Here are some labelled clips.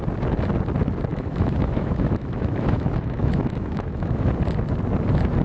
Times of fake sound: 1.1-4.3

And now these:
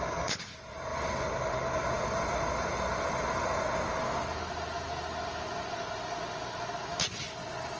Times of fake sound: none

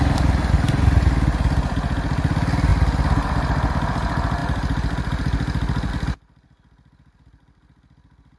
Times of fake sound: none

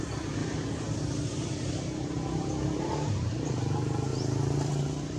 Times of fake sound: 0.4-3.5

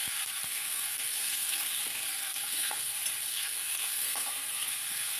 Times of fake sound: 0.0-2.9; 3.3-5.2